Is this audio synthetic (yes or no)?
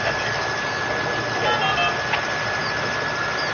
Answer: no